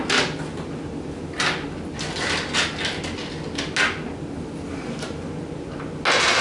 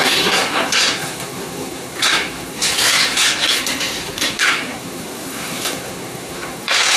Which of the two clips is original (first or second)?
first